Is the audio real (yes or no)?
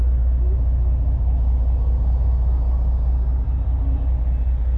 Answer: yes